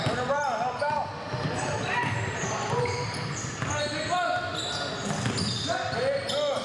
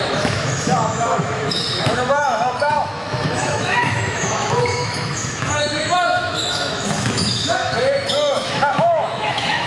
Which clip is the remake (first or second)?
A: second